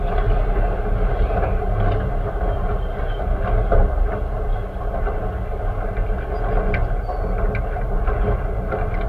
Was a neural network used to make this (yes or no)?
no